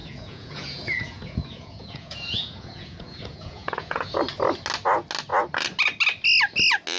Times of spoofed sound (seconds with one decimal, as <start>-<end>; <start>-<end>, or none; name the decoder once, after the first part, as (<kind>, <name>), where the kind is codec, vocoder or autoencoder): 0.0-4.2 (vocoder, Vocos)